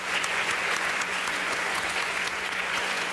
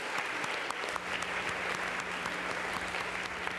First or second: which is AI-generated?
first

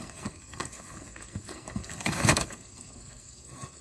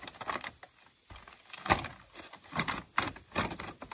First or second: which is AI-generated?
first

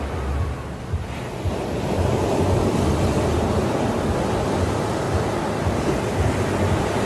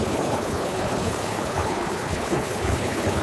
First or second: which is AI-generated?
second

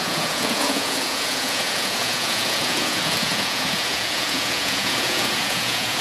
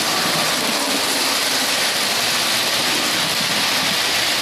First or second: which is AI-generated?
first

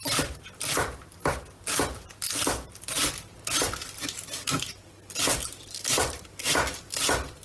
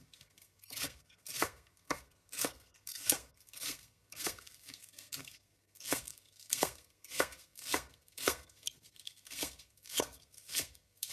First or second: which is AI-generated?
second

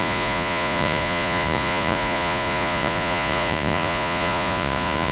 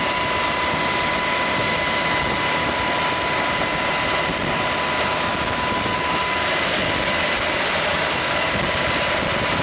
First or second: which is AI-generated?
first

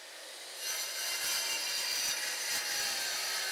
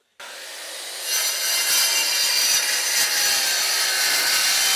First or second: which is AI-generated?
first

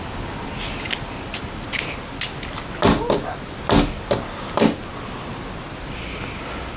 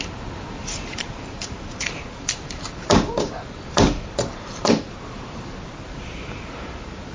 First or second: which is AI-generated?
second